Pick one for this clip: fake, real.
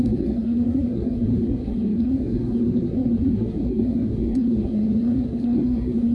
fake